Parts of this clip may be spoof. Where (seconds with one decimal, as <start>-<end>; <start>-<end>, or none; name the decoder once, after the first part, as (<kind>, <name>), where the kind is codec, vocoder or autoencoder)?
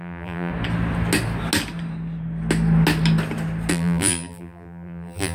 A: 0.0-0.5 (vocoder, BigVGAN v2); 3.7-5.3